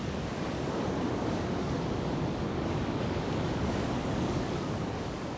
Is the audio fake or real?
fake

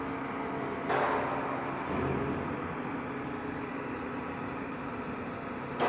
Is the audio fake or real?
real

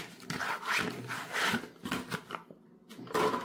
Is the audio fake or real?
real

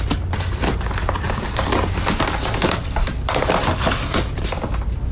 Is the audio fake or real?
real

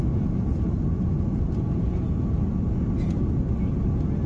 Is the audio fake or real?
real